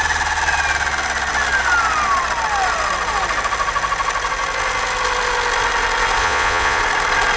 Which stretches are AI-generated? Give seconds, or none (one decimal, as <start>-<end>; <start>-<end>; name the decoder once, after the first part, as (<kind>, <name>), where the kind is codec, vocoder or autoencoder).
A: 6.2-6.8 (vocoder, Vocos)